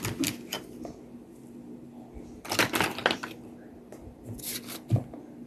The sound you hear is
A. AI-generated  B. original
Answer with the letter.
B